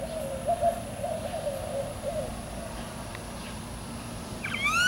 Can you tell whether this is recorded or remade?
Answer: recorded